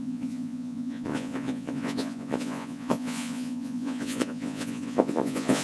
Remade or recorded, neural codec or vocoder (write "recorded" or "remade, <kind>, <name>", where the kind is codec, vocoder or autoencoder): remade, vocoder, Vocos